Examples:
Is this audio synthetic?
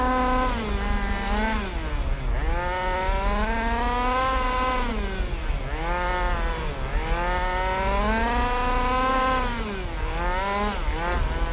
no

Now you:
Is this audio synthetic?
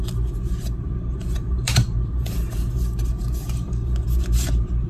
yes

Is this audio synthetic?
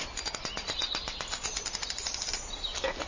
no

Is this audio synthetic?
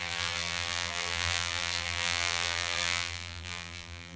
yes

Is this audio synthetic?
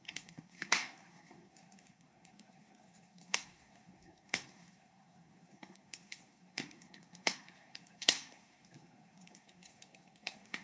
yes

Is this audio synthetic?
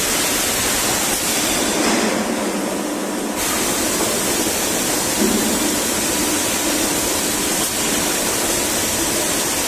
no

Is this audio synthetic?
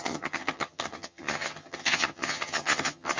yes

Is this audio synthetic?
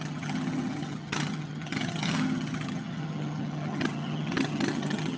yes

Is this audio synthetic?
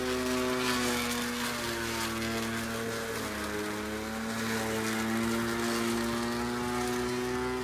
no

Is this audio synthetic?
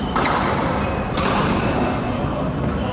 no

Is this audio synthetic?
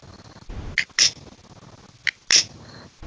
no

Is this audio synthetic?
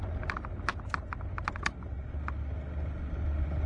no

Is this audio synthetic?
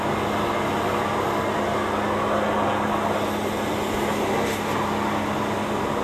no